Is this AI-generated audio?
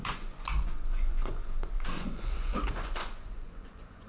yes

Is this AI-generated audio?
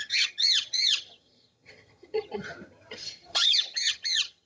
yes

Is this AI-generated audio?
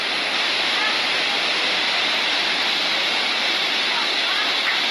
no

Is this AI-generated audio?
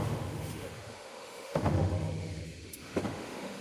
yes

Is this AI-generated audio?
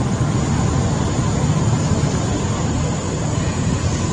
no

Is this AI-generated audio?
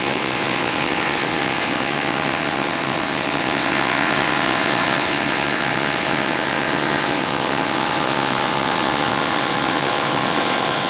yes